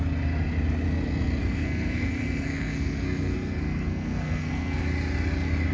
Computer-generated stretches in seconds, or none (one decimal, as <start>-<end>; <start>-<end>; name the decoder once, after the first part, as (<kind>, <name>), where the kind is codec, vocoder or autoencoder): 1.4-4.8 (codec, SNAC)